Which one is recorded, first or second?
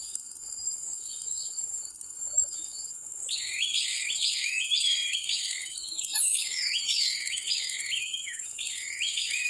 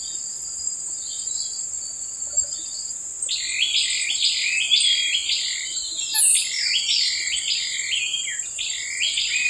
second